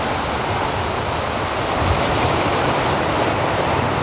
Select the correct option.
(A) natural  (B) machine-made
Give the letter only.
B